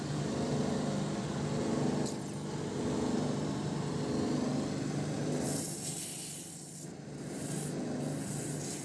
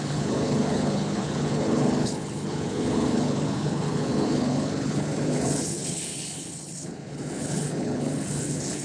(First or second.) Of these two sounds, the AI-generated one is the second